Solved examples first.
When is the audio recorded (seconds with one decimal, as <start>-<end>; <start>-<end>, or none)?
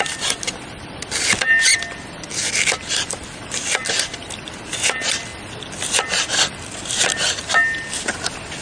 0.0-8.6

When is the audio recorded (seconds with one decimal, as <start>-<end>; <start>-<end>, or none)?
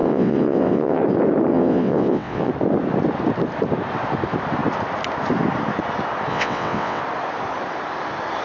1.0-1.5; 2.5-6.3; 7.0-8.4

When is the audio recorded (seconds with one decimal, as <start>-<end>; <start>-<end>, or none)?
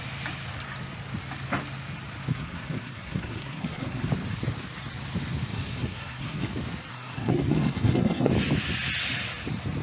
0.0-2.3; 4.1-5.5; 6.5-6.9; 8.3-9.8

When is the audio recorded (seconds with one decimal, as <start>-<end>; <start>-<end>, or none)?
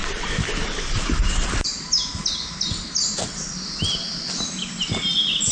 0.0-5.5